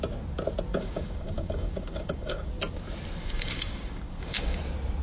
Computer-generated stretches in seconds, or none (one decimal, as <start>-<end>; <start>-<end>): 0.7-2.5; 3.2-4.6